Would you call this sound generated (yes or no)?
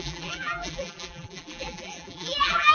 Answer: yes